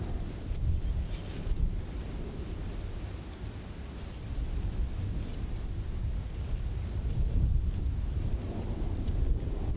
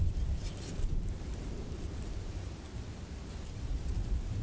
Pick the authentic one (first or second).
first